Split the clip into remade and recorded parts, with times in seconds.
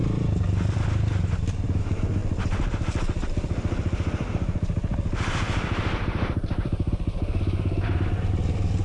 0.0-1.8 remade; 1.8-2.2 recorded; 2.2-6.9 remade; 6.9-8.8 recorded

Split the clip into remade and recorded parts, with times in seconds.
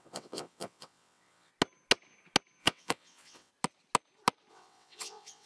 0.0-1.5 remade; 1.5-2.6 recorded; 2.6-3.5 remade; 3.5-4.5 recorded; 4.5-5.5 remade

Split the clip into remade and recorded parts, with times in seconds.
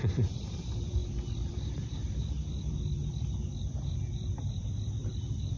0.0-5.6 remade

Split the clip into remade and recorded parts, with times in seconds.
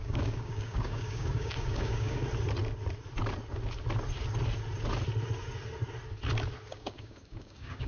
0.0-2.2 remade; 2.2-6.7 recorded; 6.7-7.9 remade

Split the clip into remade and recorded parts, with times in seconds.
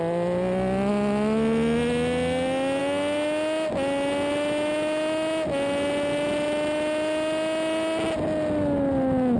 0.0-9.4 recorded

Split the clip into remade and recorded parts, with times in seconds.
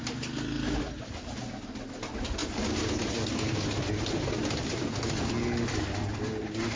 0.0-6.8 recorded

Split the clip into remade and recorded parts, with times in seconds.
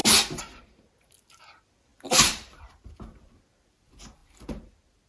0.0-1.4 recorded; 1.4-5.1 remade